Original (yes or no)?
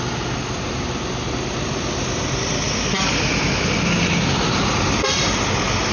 yes